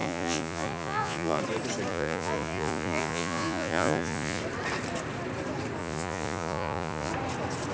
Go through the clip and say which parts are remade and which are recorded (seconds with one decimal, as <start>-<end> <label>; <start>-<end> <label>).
0.0-1.4 remade; 1.4-1.9 recorded; 1.9-4.4 remade; 4.4-5.8 recorded; 5.8-7.1 remade; 7.1-7.7 recorded